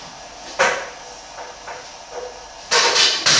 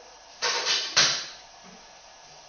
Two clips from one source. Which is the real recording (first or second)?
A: first